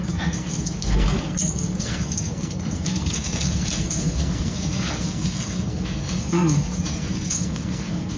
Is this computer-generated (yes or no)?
yes